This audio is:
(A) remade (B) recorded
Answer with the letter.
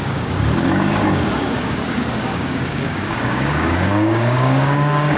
A